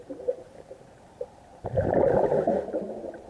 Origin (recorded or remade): recorded